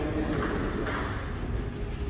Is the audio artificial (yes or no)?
no